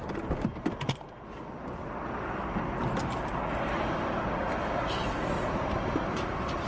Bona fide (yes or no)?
yes